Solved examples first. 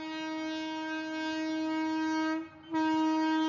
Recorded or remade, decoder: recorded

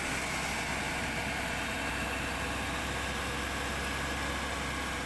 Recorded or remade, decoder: recorded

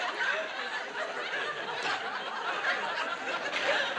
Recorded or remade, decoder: recorded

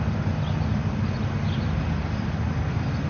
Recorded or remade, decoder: recorded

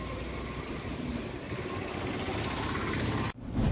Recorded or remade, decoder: recorded